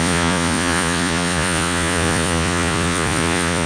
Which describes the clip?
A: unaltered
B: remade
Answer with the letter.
B